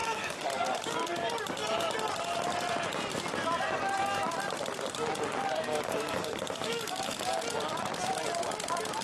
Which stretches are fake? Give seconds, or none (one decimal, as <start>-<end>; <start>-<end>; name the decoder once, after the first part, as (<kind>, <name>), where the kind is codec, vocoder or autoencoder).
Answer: 0.0-0.8 (codec, DAC); 5.7-7.2